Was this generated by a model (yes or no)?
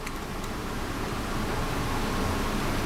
no